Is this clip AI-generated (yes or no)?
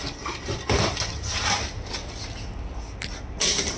no